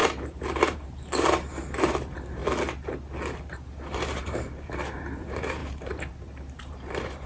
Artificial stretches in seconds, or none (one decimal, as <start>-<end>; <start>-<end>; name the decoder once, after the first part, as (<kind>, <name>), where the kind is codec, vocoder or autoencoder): 0.0-2.4 (vocoder, BigVGAN v2); 3.5-7.3

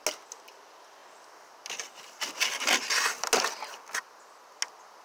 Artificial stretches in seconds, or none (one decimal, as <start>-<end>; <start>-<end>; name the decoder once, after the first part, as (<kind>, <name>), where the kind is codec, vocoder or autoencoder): none

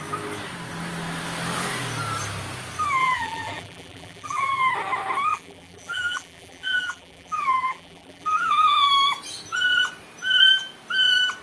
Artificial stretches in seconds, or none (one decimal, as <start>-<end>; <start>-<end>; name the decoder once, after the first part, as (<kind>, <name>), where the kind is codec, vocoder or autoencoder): 3.0-4.7 (vocoder, BigVGAN v2); 5.3-8.9

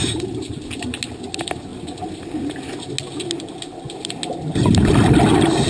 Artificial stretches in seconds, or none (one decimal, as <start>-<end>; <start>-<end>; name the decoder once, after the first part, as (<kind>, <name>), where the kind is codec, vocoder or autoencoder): 0.0-0.6 (vocoder, BigVGAN v2)

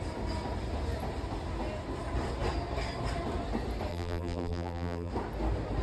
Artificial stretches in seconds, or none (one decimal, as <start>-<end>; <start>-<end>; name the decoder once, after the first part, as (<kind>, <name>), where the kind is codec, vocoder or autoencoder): 3.9-5.1 (vocoder, BigVGAN v2)

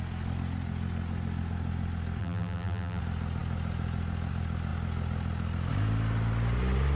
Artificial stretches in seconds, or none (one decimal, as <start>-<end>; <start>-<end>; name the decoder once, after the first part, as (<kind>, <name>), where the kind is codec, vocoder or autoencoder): 2.2-3.0 (vocoder, BigVGAN v2)